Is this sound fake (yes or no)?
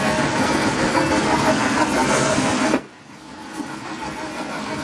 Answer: yes